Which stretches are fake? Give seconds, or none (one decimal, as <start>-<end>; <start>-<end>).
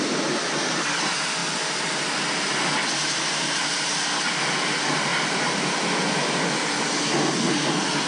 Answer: none